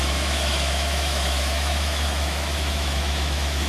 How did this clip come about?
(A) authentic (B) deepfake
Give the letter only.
B